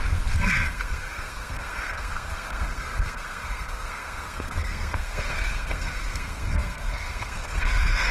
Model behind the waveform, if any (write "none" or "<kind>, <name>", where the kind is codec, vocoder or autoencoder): codec, SNAC